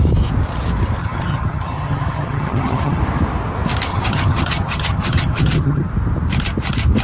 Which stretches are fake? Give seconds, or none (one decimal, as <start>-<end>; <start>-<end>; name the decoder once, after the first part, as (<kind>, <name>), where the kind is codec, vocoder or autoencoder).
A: 1.0-3.0 (vocoder, HiFi-GAN); 3.9-5.9